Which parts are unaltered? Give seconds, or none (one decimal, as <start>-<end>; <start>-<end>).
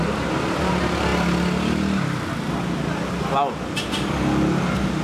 0.0-5.0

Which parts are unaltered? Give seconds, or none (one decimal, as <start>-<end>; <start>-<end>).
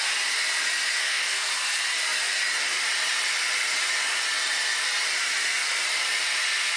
0.0-1.0; 1.5-6.8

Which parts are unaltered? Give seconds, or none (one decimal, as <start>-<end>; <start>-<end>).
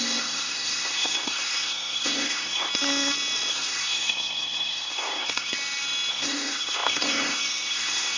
2.7-3.5; 5.5-6.1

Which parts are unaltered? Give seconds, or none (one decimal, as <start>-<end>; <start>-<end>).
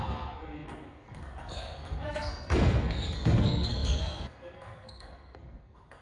none